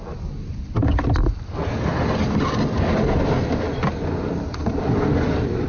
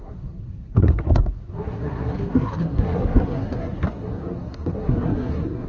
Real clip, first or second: first